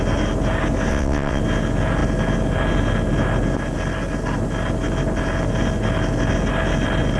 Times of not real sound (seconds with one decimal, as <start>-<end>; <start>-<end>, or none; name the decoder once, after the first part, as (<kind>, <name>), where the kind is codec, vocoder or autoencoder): 0.9-1.4 (vocoder, WaveNeXt)